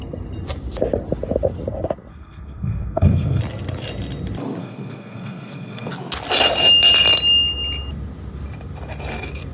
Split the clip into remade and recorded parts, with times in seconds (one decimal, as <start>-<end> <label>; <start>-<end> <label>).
0.0-2.1 recorded; 2.1-3.4 remade; 3.4-4.6 recorded; 4.6-5.9 remade; 5.9-9.5 recorded